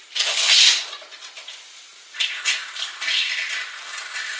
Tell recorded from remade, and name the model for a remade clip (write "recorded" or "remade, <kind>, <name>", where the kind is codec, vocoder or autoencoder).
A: recorded